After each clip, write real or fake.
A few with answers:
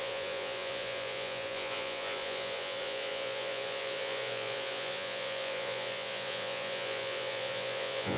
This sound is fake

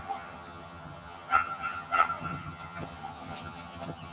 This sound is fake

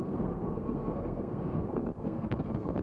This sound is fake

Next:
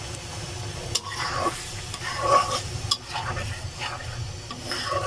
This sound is real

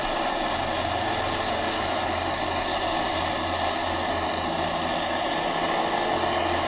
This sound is real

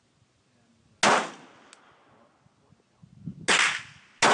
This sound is real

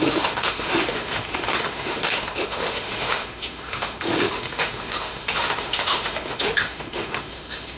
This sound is fake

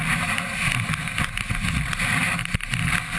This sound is real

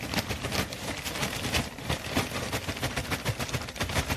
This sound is real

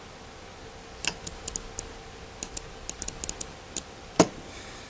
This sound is real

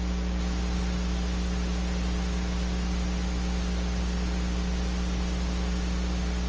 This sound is real